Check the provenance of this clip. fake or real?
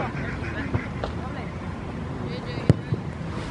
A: real